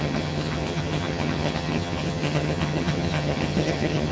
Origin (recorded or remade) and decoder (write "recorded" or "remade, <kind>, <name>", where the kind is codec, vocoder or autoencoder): remade, vocoder, HiFi-GAN